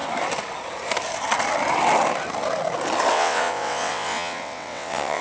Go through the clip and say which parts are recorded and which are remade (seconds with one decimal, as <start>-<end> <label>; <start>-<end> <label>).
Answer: 0.0-3.1 recorded; 3.1-5.2 remade